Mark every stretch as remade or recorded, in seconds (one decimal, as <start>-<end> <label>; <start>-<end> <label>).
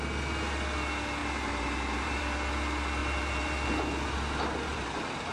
0.0-1.2 recorded; 1.2-2.2 remade; 2.2-3.0 recorded; 3.0-3.7 remade; 3.7-4.7 recorded; 4.7-5.3 remade